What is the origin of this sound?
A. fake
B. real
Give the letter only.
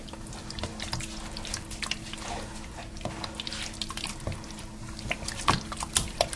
B